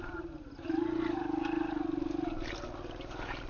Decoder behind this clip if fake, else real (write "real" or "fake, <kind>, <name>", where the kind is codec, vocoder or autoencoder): real